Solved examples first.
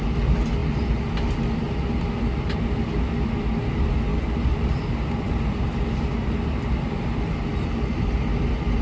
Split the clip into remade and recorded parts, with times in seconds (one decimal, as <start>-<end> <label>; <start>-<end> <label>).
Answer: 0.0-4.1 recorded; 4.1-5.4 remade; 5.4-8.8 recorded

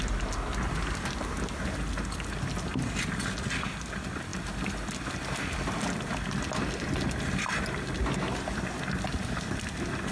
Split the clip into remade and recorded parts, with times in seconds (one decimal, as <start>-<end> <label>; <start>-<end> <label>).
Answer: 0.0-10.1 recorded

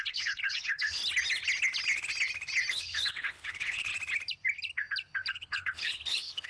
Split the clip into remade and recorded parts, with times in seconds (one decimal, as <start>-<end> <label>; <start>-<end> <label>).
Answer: 0.0-1.0 remade; 1.0-2.7 recorded; 2.7-3.9 remade; 3.9-5.3 recorded; 5.3-6.5 remade